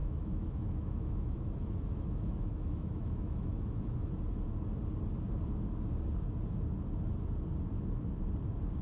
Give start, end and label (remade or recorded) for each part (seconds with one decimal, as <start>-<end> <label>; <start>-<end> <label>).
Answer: 0.0-4.1 remade; 4.1-8.8 recorded